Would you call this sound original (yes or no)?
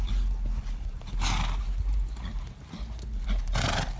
yes